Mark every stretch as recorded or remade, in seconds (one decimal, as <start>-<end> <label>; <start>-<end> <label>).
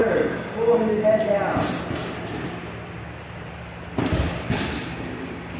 0.0-1.2 remade; 1.2-5.6 recorded